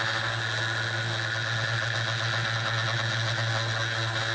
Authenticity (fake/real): real